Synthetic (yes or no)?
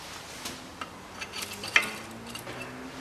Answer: no